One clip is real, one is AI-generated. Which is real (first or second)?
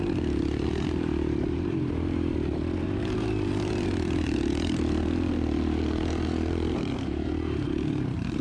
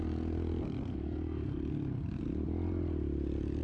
second